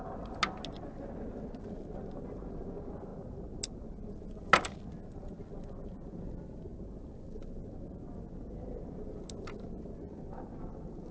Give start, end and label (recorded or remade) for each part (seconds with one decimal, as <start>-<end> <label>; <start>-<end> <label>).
0.0-11.1 recorded

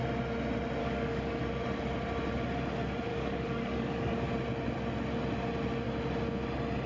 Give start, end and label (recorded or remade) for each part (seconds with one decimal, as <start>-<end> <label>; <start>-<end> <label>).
0.0-0.8 recorded; 0.8-1.4 remade; 1.4-3.1 recorded; 3.1-4.3 remade; 4.3-6.9 recorded

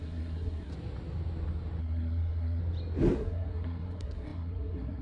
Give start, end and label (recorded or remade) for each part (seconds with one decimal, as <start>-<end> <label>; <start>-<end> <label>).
0.0-0.7 remade; 0.7-1.8 recorded; 1.8-2.6 remade; 2.6-3.1 recorded; 3.1-5.0 remade

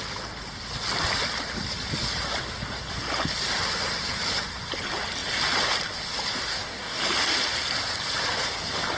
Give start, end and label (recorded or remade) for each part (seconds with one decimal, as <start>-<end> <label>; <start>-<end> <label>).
0.0-6.5 recorded; 6.5-7.0 remade; 7.0-9.0 recorded

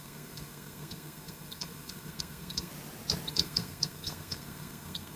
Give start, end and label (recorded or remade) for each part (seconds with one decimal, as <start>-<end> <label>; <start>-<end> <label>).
0.0-2.7 remade; 2.7-3.3 recorded; 3.3-5.2 remade